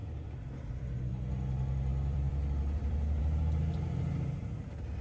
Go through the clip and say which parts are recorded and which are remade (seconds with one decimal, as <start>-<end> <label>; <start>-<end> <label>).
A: 0.0-1.9 recorded; 1.9-3.2 remade; 3.2-5.0 recorded